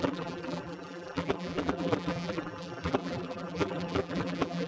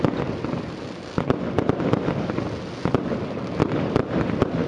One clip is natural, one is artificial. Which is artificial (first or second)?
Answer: first